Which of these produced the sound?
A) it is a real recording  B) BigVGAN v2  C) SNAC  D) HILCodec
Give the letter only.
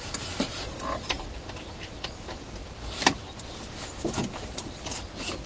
B